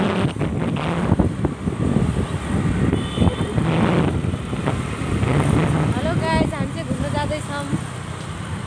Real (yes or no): yes